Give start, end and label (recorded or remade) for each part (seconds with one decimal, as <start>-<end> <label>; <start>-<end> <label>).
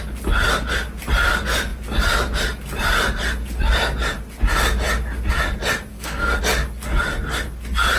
0.0-5.9 recorded; 5.9-6.4 remade; 6.4-8.0 recorded